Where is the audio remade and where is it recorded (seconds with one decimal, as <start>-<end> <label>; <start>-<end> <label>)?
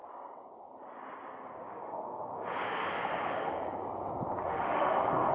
0.0-1.6 recorded; 1.6-3.5 remade; 3.5-4.4 recorded; 4.4-5.3 remade